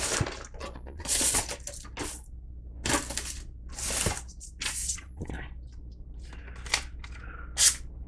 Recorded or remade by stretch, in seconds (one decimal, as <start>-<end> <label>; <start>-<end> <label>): 0.0-0.6 recorded; 0.6-1.4 remade; 1.4-4.8 recorded; 4.8-5.3 remade; 5.3-8.1 recorded